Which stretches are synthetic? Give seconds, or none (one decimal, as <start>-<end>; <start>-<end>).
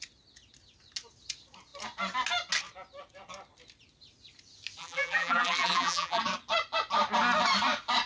4.8-6.2